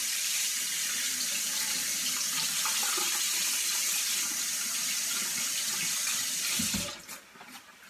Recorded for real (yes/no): yes